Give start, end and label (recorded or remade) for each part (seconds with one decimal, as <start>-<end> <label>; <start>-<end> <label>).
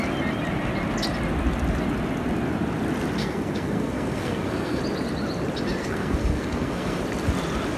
0.0-3.2 recorded; 3.2-4.8 remade; 4.8-5.8 recorded; 5.8-7.0 remade; 7.0-7.8 recorded